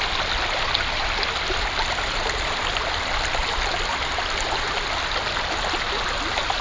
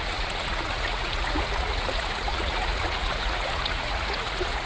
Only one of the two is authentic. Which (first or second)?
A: first